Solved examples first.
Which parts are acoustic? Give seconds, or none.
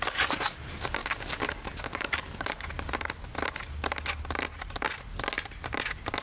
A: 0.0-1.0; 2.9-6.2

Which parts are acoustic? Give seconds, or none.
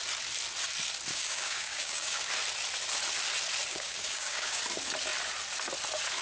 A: 0.0-1.1; 2.3-3.7; 4.6-6.2